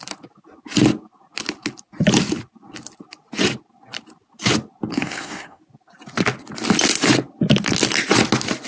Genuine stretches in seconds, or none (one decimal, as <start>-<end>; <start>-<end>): 0.0-4.9; 5.6-8.7